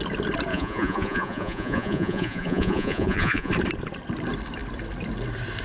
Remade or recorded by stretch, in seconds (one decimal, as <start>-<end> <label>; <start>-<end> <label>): 0.0-0.5 recorded; 0.5-3.5 remade; 3.5-5.6 recorded